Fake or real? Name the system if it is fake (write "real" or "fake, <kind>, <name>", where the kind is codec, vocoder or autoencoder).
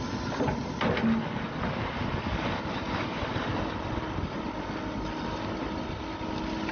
real